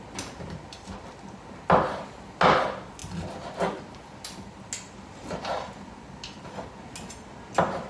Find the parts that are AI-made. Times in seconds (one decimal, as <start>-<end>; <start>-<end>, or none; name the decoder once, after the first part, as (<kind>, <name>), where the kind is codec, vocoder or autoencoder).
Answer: none